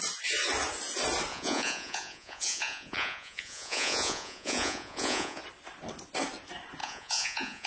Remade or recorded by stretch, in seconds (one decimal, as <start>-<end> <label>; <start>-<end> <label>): 0.0-1.3 recorded; 1.3-5.4 remade; 5.4-6.8 recorded; 6.8-7.7 remade